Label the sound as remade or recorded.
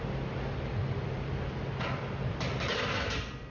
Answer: recorded